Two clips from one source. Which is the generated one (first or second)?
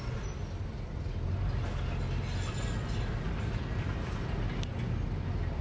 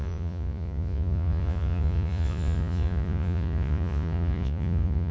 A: second